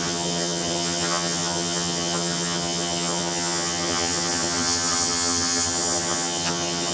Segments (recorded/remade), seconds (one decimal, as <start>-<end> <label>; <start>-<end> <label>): 0.0-6.9 remade

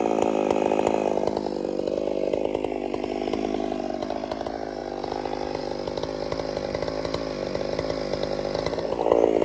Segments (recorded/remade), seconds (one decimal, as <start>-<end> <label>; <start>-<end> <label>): 0.0-9.4 recorded

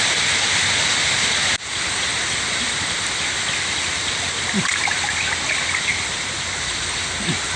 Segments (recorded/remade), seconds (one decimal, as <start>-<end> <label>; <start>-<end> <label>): 0.0-7.6 recorded